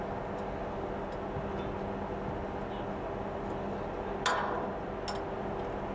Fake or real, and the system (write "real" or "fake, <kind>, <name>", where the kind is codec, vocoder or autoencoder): real